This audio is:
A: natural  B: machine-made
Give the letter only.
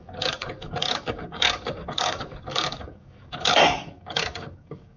B